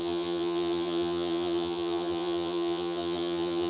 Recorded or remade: remade